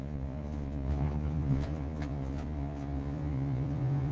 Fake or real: fake